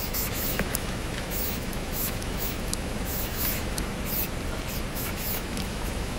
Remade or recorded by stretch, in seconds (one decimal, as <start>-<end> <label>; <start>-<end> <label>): 0.0-3.9 remade; 3.9-4.9 recorded; 4.9-6.2 remade